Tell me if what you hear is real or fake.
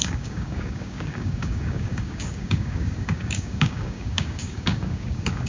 fake